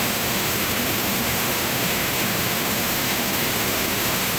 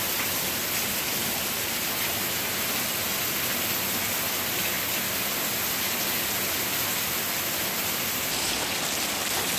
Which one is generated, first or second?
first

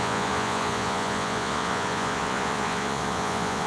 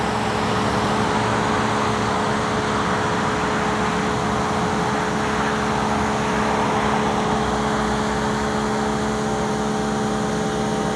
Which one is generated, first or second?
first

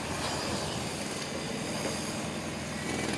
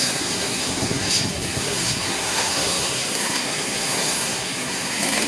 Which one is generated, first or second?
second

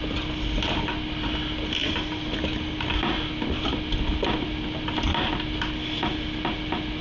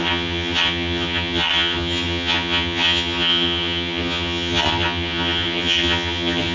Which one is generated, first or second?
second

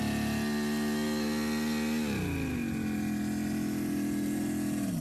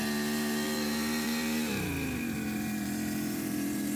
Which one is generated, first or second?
second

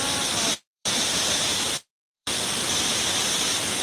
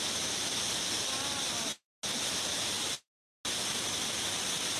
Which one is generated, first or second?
first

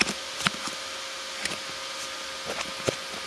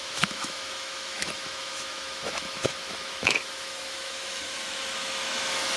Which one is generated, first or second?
second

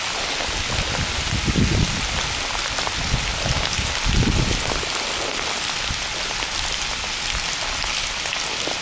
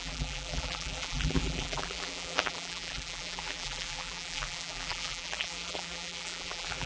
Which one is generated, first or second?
second